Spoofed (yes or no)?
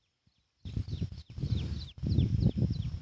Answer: no